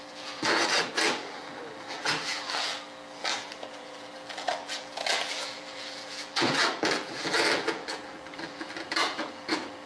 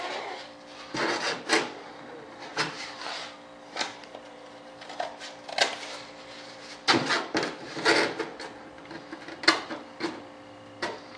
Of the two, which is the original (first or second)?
second